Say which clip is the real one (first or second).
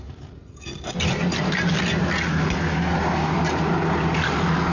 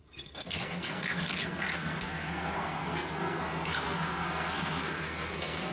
first